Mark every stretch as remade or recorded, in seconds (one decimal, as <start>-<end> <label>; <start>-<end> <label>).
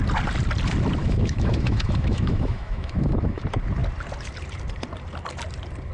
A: 0.0-1.0 recorded; 1.0-3.4 remade; 3.4-5.9 recorded